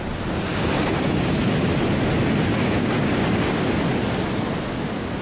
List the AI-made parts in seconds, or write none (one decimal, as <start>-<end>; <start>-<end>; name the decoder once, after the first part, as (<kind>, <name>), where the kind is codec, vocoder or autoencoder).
0.5-1.1 (codec, DAC); 2.6-3.7